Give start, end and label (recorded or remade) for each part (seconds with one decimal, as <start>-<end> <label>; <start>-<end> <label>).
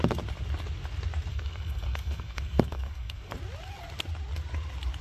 0.0-1.3 recorded; 1.3-3.3 remade; 3.3-5.0 recorded